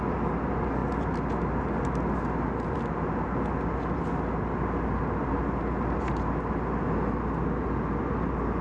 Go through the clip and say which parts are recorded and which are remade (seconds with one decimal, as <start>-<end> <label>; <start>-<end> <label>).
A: 0.0-8.6 recorded